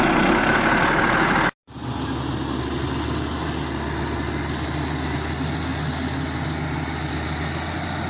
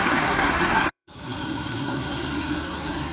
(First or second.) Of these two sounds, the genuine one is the first